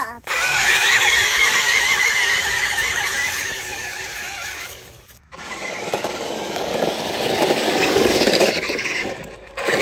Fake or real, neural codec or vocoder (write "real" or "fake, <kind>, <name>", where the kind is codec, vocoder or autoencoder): fake, codec, DAC